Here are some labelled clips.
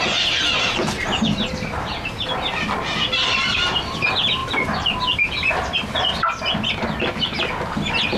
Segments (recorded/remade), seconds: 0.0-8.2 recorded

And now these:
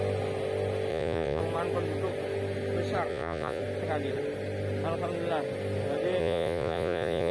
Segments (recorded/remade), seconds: 0.0-0.9 recorded; 0.9-1.4 remade; 1.4-3.1 recorded; 3.1-3.6 remade; 3.6-6.2 recorded; 6.2-7.3 remade

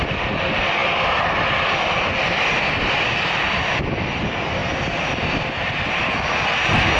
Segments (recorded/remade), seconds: 0.0-7.0 recorded

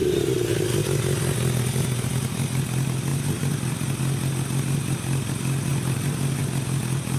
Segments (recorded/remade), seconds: 0.0-3.1 recorded; 3.1-4.0 remade; 4.0-5.7 recorded; 5.7-6.4 remade; 6.4-7.2 recorded

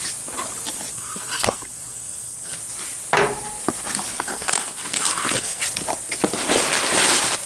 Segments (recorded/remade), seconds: 0.0-0.9 recorded; 0.9-2.6 remade; 2.6-4.1 recorded; 4.1-5.6 remade; 5.6-7.5 recorded

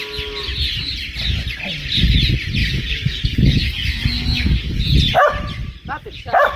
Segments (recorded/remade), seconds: 0.0-2.6 recorded; 2.6-4.8 remade; 4.8-6.6 recorded

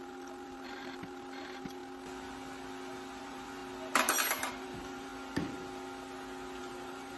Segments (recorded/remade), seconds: 0.0-1.8 remade; 1.8-3.2 recorded; 3.2-3.6 remade; 3.6-4.5 recorded; 4.5-5.1 remade; 5.1-6.6 recorded; 6.6-7.2 remade

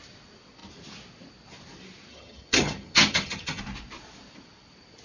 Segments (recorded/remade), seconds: 0.0-2.1 recorded; 2.1-3.6 remade; 3.6-5.0 recorded